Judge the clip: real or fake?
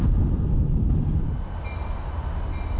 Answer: real